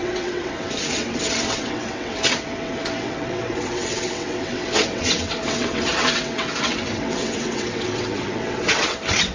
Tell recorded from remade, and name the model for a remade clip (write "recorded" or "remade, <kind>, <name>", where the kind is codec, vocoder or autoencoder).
remade, vocoder, WaveNeXt